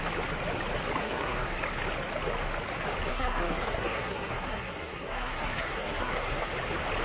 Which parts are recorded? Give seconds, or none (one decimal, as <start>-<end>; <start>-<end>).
0.0-1.0; 1.6-3.1; 6.5-7.0